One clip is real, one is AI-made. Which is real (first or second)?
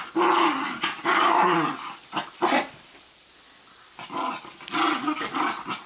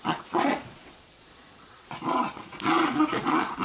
first